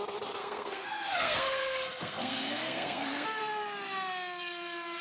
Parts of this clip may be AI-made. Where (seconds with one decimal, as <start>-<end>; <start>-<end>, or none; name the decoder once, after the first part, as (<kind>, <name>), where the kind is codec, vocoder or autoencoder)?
0.4-3.4 (codec, SNAC)